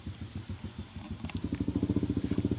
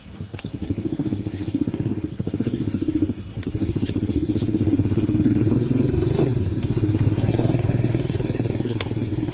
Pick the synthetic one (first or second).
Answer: second